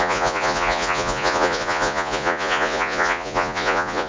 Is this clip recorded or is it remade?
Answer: remade